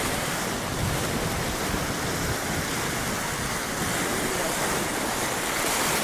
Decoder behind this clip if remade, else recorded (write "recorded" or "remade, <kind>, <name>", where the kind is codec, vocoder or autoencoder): recorded